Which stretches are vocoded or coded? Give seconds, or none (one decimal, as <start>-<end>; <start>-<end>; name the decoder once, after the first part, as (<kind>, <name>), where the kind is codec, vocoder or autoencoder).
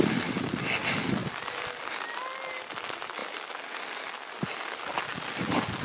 none